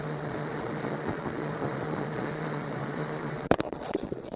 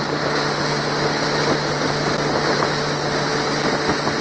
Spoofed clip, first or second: first